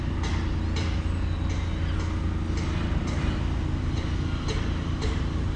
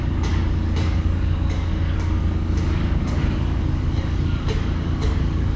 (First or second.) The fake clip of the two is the second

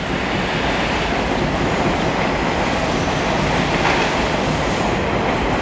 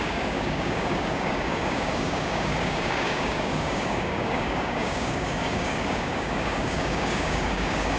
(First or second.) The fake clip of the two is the second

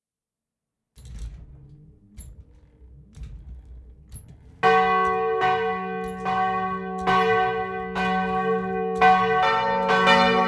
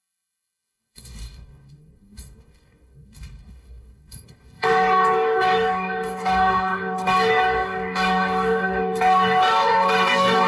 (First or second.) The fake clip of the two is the second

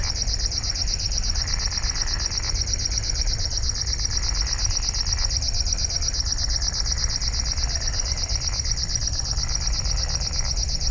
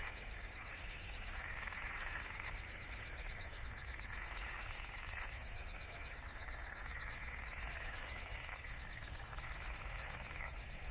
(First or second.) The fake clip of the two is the second